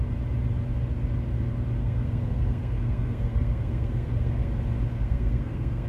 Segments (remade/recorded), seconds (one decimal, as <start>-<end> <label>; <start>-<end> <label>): 0.0-1.8 recorded; 1.8-4.5 remade; 4.5-4.9 recorded; 4.9-5.9 remade